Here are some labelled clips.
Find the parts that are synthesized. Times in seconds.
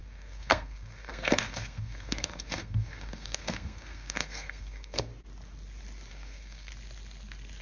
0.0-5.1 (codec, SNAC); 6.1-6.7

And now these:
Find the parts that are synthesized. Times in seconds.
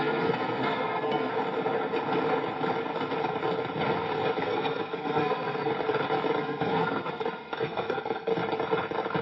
0.0-1.3 (codec, SNAC); 4.4-5.7; 6.4-8.3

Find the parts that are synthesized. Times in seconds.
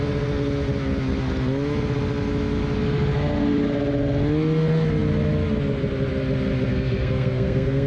6.7-7.9 (codec, SNAC)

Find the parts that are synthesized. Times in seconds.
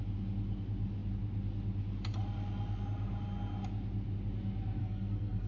4.8-5.5 (codec, SNAC)